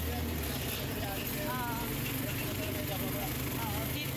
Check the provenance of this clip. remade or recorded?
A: recorded